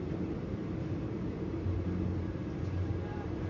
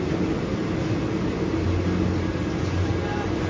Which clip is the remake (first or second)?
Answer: first